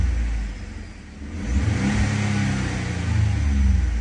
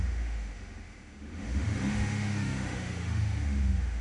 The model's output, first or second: second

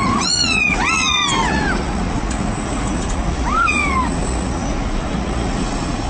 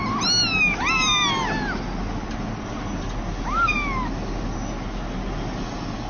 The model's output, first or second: first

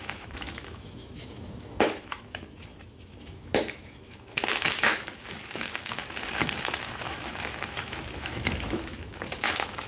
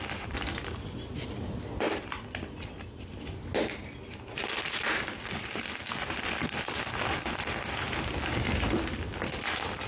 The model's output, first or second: first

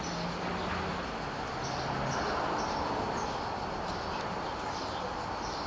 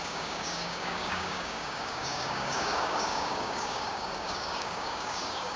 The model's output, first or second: second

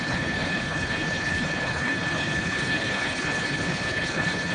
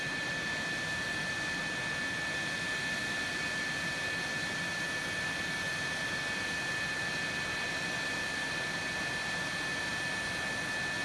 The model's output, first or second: first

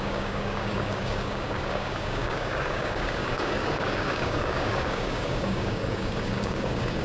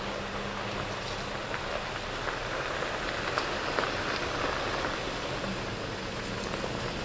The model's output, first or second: first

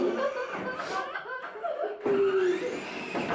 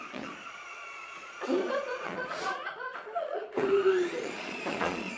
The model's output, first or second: second